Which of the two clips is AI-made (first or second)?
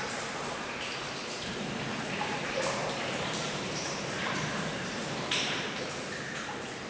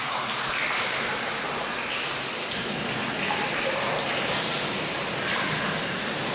first